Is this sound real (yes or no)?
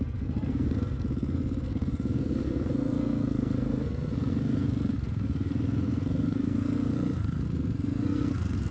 no